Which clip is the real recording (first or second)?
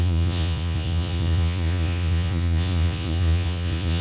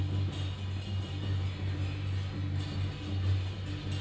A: second